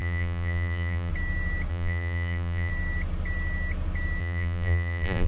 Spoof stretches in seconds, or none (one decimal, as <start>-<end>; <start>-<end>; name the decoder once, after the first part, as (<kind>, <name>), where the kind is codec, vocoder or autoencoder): 0.0-1.1 (vocoder, BigVGAN v2); 1.7-2.7; 4.2-5.3